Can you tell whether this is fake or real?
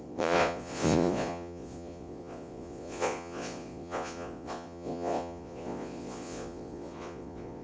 fake